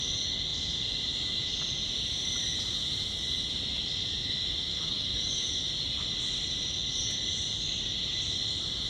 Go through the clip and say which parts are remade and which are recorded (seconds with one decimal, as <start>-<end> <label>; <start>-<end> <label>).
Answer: 0.0-4.7 recorded; 4.7-5.5 remade; 5.5-8.9 recorded